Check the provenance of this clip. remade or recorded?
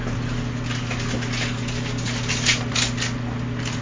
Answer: recorded